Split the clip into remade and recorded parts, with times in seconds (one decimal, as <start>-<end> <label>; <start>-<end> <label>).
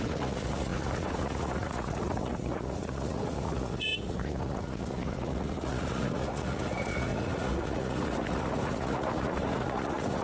0.0-10.2 remade